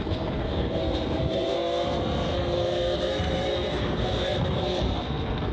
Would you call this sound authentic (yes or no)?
no